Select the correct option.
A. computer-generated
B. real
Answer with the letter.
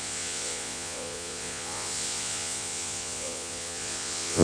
A